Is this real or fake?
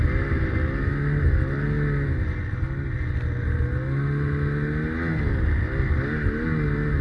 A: real